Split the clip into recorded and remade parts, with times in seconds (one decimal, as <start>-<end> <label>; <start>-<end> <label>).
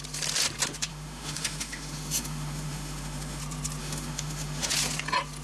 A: 0.0-0.9 recorded; 0.9-3.4 remade; 3.4-3.8 recorded; 3.8-4.7 remade; 4.7-5.4 recorded